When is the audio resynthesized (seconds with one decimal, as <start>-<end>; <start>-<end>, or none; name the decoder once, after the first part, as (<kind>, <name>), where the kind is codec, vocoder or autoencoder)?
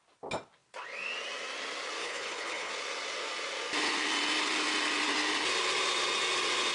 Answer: 2.0-2.7 (codec, HILCodec)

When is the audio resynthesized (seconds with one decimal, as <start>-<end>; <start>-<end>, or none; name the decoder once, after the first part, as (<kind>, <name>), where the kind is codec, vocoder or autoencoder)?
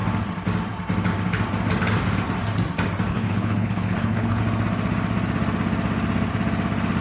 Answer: 3.1-4.4 (codec, HILCodec)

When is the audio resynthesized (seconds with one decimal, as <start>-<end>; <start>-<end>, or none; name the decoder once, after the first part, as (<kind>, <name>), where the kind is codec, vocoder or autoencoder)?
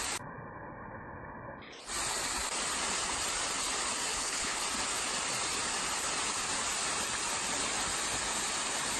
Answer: 4.1-4.6 (codec, HILCodec)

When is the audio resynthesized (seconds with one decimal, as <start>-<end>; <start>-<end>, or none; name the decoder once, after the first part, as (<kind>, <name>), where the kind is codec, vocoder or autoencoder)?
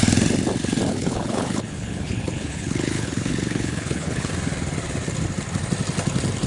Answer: 0.9-4.3 (codec, HILCodec)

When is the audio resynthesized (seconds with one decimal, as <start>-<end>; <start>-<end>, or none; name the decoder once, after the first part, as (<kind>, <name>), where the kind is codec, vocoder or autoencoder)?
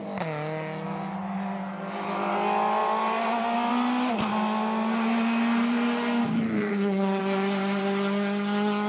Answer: 6.7-7.2 (codec, HILCodec)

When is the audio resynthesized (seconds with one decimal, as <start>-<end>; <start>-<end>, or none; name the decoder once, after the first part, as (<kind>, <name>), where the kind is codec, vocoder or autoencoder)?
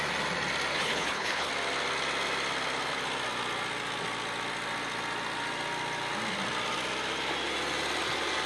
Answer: 0.7-1.5 (codec, HILCodec)